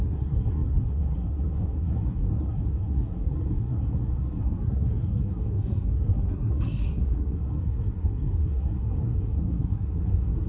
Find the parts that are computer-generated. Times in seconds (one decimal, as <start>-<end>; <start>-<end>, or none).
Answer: 0.0-10.5